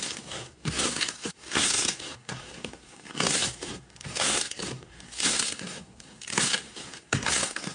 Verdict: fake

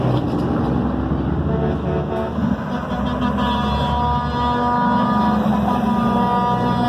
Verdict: real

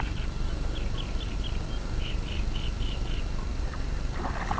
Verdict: real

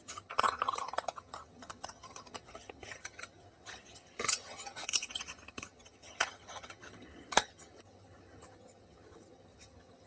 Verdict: fake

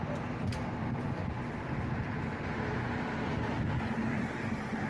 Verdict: real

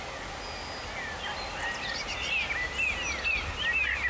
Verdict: real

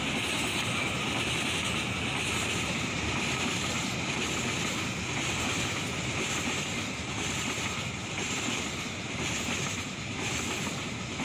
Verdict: real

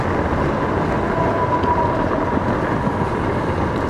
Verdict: real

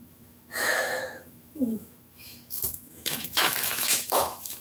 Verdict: fake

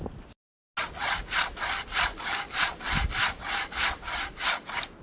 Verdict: real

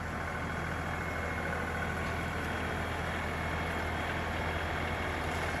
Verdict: real